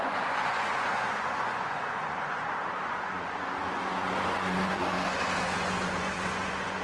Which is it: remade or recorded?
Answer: remade